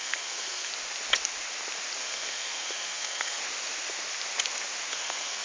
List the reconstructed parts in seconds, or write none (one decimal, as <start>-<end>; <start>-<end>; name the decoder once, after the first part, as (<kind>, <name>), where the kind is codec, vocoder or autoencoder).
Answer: 0.0-0.7 (codec, SNAC); 2.0-3.4; 4.9-5.4